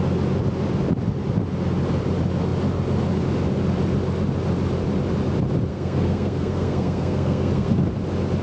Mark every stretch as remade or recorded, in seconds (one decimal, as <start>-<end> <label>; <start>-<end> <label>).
0.0-5.7 recorded; 5.7-7.8 remade; 7.8-8.4 recorded

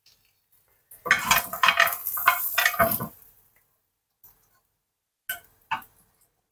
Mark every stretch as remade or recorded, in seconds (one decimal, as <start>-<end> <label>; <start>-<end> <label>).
0.0-2.0 recorded; 2.0-3.5 remade; 3.5-6.5 recorded

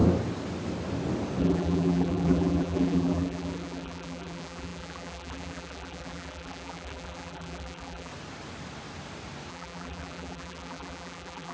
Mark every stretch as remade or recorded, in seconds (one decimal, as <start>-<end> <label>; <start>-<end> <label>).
0.0-1.4 recorded; 1.4-8.1 remade; 8.1-9.5 recorded; 9.5-11.5 remade

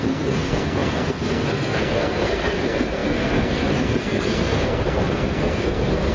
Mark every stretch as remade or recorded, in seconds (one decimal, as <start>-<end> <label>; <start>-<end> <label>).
0.0-6.1 remade

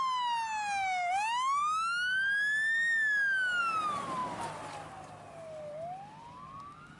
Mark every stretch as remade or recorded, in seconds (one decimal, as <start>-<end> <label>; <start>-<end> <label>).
0.0-7.0 recorded